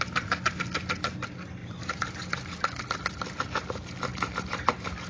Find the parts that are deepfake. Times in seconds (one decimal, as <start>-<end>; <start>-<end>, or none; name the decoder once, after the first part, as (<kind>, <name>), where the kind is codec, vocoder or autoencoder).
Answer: 1.6-2.8 (vocoder, BigVGAN v2); 4.1-5.1